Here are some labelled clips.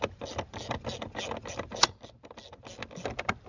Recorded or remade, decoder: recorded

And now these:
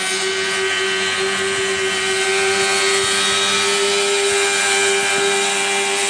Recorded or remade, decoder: recorded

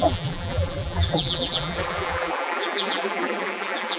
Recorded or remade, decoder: remade, vocoder, BigVGAN v2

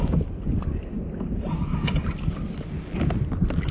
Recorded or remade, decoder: recorded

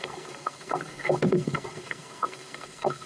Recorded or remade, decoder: remade, codec, SNAC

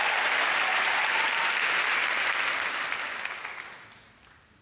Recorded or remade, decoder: recorded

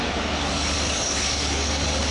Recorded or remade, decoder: remade, codec, DAC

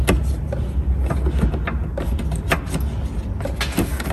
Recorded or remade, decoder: recorded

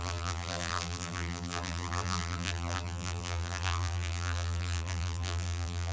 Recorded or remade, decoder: remade, vocoder, BigVGAN v2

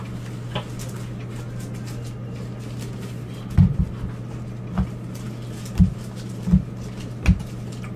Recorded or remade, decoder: recorded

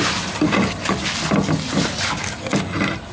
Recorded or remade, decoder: recorded